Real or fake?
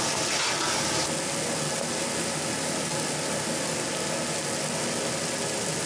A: real